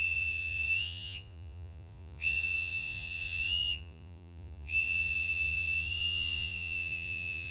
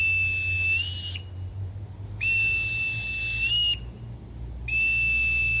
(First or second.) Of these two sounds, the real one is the second